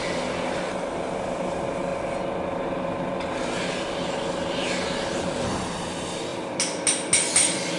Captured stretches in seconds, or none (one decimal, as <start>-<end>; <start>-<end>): 0.0-7.8